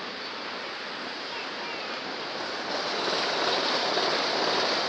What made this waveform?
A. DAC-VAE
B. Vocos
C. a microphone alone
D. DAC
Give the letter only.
C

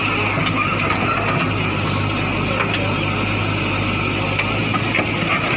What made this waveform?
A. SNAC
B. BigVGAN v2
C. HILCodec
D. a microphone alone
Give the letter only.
D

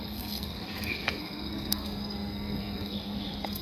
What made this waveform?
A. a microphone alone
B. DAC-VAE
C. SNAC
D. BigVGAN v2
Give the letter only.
C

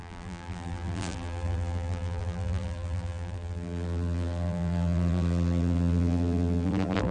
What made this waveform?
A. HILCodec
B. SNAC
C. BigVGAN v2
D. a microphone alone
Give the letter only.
C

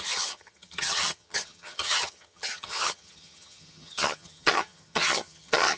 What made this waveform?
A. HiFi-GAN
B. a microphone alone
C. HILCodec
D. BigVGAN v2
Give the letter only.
A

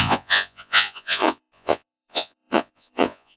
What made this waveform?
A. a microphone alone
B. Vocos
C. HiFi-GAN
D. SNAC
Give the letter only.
B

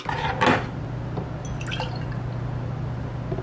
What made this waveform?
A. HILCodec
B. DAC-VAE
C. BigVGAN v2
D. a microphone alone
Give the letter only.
D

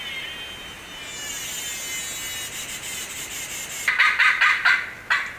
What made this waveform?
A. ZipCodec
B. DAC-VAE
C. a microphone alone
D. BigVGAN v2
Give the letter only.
C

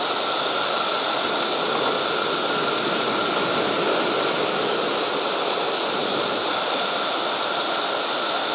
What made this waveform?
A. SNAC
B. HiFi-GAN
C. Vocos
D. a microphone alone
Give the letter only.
D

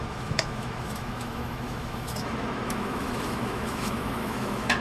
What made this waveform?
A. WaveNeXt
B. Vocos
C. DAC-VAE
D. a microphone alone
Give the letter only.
C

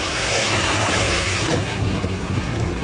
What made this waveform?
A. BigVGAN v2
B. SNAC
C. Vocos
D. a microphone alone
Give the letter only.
B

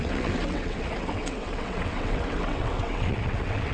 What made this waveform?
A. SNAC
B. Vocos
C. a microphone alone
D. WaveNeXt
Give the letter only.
D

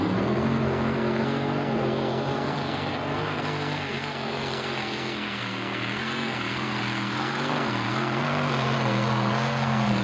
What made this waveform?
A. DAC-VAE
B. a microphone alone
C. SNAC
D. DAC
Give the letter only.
C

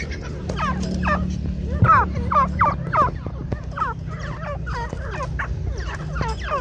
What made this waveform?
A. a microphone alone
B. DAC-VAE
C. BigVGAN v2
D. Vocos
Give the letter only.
A